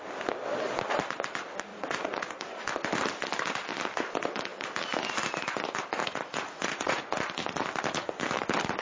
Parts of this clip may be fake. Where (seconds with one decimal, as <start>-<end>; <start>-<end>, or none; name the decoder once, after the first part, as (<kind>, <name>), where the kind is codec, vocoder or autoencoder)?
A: 1.7-2.3 (vocoder, Vocos); 6.0-7.0